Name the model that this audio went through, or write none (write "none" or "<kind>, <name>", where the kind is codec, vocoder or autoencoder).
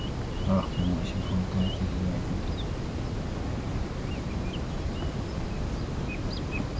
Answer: none